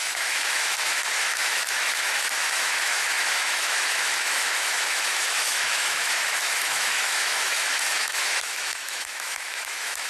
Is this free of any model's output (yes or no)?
no